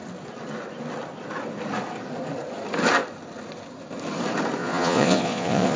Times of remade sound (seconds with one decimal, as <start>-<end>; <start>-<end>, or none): 4.6-5.8